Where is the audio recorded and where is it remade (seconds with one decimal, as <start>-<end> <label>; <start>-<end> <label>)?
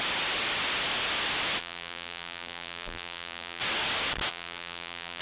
0.0-1.6 recorded; 1.6-3.6 remade; 3.6-4.3 recorded; 4.3-5.2 remade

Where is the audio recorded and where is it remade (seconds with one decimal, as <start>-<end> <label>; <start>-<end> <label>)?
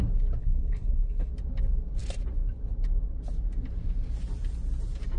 0.0-0.4 recorded; 0.4-1.3 remade; 1.3-5.2 recorded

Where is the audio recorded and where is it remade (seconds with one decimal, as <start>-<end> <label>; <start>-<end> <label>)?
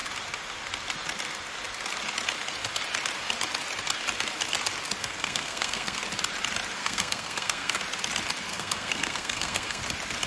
0.0-5.0 recorded; 5.0-6.0 remade; 6.0-6.8 recorded; 6.8-7.8 remade; 7.8-8.5 recorded; 8.5-9.8 remade; 9.8-10.3 recorded